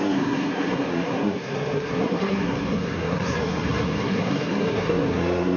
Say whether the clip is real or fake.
fake